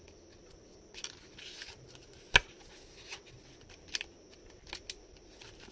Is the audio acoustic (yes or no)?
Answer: yes